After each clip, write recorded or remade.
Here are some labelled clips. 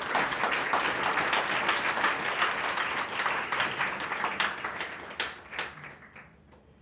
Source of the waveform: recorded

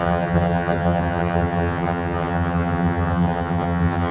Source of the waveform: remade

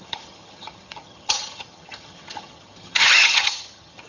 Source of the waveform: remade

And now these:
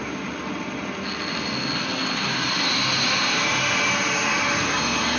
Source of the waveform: recorded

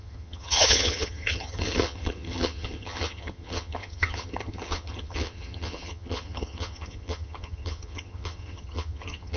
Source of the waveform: remade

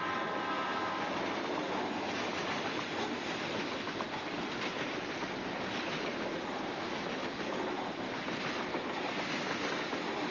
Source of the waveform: recorded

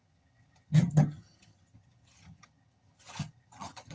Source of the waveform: remade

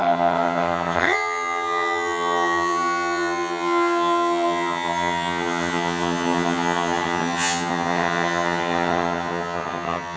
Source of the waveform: remade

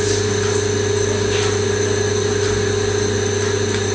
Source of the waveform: recorded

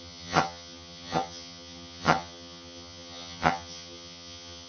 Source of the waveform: remade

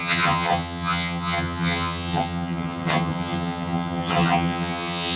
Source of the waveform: remade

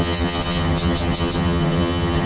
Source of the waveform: remade